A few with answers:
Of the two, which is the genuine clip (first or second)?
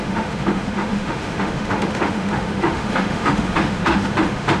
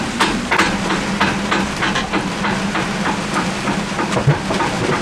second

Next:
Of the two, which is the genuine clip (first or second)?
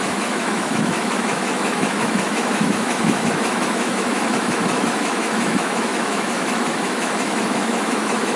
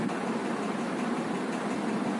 second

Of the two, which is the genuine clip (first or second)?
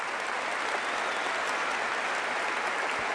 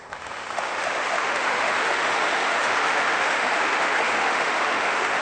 first